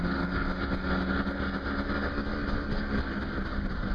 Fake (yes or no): no